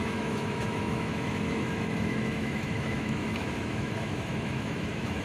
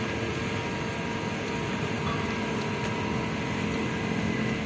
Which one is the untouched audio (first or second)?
second